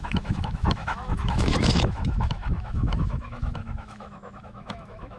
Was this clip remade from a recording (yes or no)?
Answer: yes